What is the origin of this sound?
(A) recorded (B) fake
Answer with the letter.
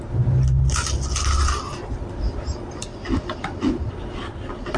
A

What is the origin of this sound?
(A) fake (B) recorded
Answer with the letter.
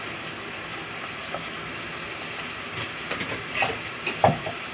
B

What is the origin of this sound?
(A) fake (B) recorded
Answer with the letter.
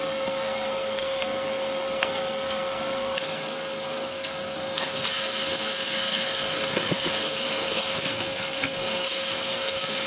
A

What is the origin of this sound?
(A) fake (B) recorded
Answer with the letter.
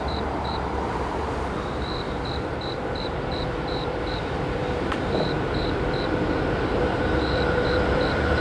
A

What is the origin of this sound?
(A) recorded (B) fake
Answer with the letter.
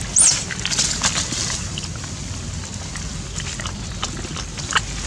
A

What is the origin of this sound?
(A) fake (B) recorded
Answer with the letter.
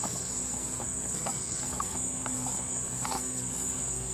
A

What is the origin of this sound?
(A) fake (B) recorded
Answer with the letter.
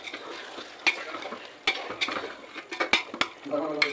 B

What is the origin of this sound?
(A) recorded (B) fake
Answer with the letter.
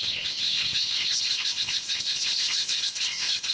B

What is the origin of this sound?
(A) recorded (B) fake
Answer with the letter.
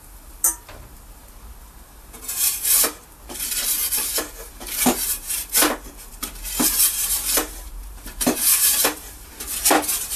B